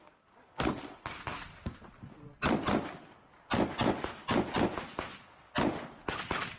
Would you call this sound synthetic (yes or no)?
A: no